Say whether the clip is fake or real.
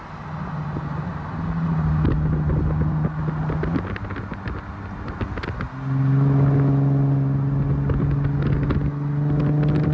real